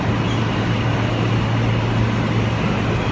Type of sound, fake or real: real